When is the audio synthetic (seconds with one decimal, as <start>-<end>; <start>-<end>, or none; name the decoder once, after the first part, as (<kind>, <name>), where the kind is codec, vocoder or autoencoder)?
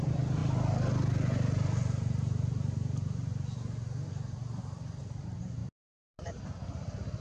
5.6-6.4 (vocoder, BigVGAN v2)